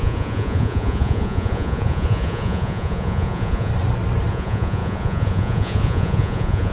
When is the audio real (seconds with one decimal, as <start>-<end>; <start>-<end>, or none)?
3.7-4.3